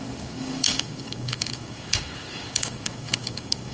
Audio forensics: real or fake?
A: fake